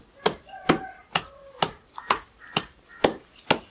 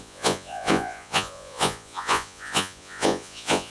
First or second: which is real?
first